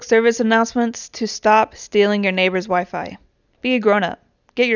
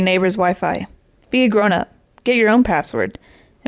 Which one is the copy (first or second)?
second